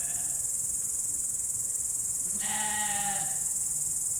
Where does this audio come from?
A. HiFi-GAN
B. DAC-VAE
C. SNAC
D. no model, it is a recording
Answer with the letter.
D